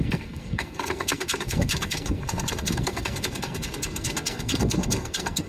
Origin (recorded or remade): remade